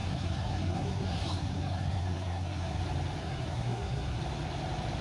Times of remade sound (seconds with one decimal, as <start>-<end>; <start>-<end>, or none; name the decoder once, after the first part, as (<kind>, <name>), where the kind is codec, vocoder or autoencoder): 0.0-2.8 (codec, SNAC); 3.2-4.2

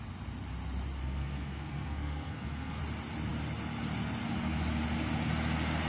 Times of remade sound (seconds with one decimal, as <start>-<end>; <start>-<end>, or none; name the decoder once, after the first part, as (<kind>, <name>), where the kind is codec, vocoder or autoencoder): 1.0-2.8 (codec, SNAC)